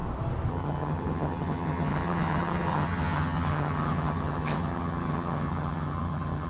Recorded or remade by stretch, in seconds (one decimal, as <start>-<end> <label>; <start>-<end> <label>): 0.0-0.5 recorded; 0.5-6.5 remade